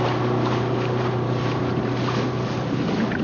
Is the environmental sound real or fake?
real